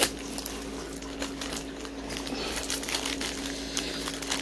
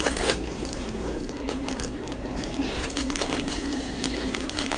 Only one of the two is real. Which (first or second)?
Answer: first